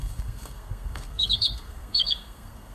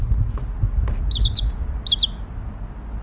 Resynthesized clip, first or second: first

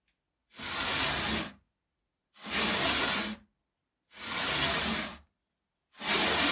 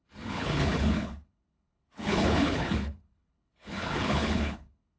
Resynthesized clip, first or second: second